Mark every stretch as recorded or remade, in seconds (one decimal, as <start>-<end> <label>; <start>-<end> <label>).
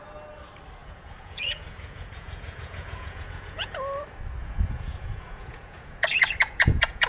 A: 0.0-0.8 recorded; 0.8-3.7 remade; 3.7-4.4 recorded; 4.4-7.1 remade